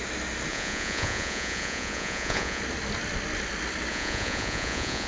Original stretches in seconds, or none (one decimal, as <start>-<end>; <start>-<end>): 0.0-0.5; 2.6-3.9